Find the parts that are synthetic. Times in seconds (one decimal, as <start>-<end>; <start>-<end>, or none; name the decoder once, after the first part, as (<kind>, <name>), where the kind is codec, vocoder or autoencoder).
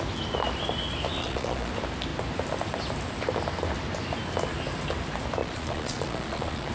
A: 1.2-1.7 (vocoder, Vocos); 5.4-6.7